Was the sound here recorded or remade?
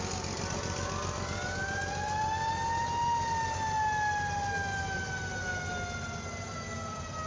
recorded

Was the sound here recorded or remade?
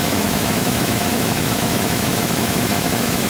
remade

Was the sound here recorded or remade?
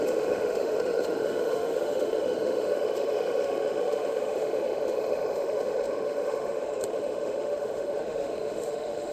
remade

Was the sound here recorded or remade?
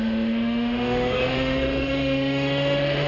remade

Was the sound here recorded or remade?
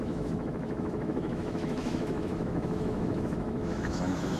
remade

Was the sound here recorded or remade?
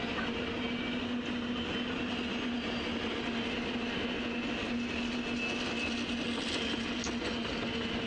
recorded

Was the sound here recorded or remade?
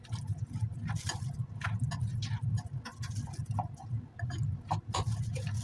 recorded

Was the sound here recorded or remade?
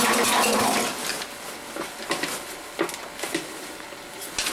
recorded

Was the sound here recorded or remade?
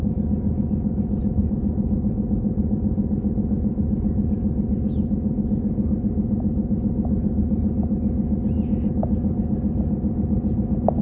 recorded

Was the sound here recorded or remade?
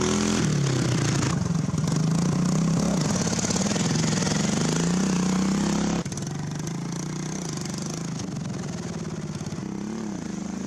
recorded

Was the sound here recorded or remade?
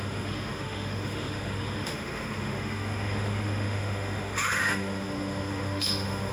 remade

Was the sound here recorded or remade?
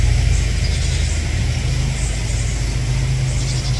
recorded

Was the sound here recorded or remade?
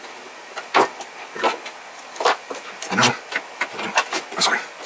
recorded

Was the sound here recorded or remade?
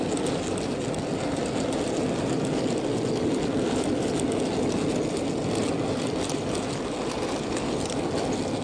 recorded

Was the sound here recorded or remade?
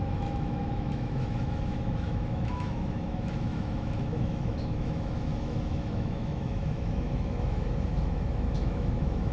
remade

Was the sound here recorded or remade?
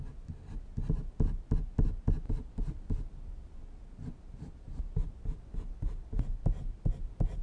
recorded